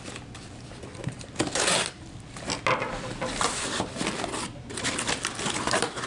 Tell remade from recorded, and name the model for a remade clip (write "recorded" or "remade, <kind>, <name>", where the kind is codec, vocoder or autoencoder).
recorded